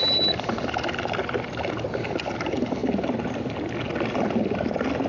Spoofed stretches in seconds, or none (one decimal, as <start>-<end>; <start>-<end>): none